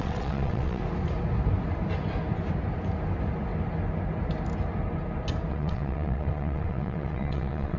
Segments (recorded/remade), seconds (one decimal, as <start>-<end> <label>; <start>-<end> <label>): 0.0-0.8 remade; 0.8-5.5 recorded; 5.5-7.8 remade